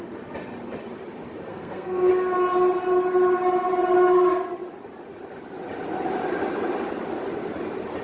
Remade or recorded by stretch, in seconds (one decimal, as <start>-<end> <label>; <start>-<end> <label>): 0.0-1.5 recorded; 1.5-2.1 remade; 2.1-8.0 recorded